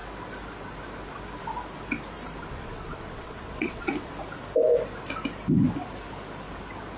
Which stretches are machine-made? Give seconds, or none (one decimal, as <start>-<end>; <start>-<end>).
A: 2.6-4.1